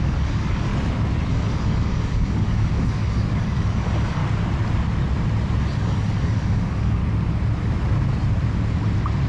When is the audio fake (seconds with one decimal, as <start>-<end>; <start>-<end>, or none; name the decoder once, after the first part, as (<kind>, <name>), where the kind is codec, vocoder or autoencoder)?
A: 0.0-0.7 (codec, DAC); 1.3-4.2; 5.6-7.0